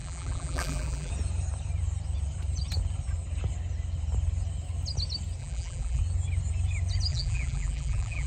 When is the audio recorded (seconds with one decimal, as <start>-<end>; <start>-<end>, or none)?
1.1-5.4; 6.0-7.1